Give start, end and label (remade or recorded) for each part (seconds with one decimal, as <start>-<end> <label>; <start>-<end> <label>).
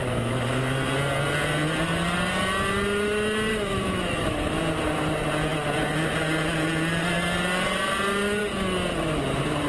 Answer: 0.0-0.6 remade; 0.6-3.5 recorded; 3.5-4.6 remade; 4.6-9.7 recorded